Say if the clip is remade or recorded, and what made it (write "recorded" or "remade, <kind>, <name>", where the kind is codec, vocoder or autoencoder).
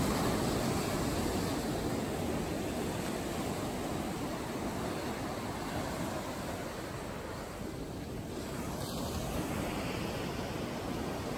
recorded